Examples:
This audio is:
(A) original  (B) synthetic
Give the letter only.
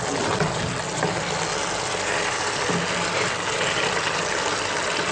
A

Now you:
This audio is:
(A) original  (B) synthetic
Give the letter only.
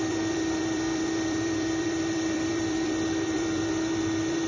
B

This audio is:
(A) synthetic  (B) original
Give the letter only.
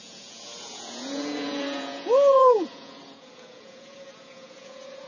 A